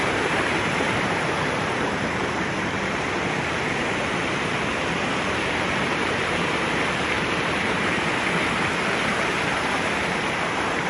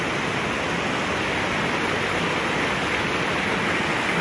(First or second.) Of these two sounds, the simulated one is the first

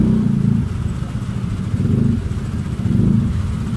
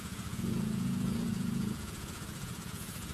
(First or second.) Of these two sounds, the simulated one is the second